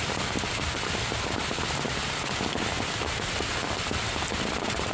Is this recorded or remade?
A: recorded